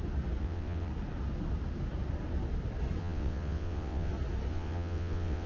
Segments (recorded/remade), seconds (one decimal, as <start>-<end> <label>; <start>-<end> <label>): 0.0-0.4 recorded; 0.4-0.9 remade; 0.9-3.0 recorded; 3.0-4.1 remade; 4.1-4.5 recorded; 4.5-5.5 remade